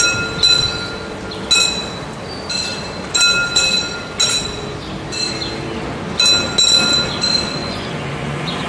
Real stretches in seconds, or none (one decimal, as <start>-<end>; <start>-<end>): 0.0-7.6